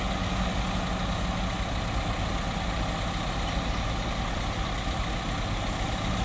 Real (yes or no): yes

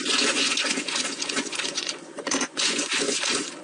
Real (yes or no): no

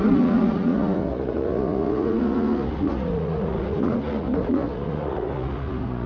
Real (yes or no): no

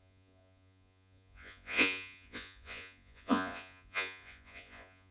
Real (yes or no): no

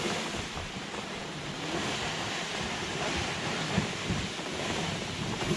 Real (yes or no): yes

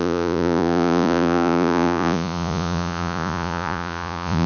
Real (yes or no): no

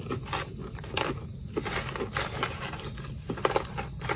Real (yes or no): yes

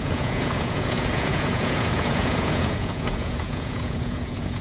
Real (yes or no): no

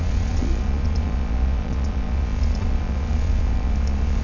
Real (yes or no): no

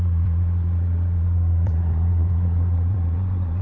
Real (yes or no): no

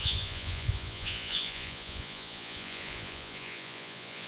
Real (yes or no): no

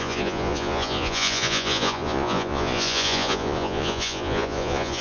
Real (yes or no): no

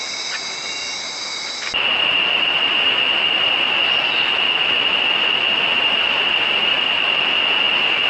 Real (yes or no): yes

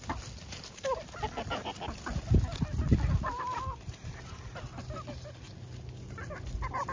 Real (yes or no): yes